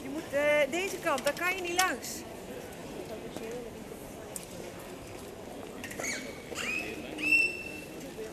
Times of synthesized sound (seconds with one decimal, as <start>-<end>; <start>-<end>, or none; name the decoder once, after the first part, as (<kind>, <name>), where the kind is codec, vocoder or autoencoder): none